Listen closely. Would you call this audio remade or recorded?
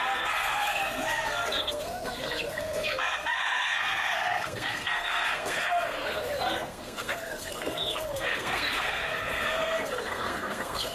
remade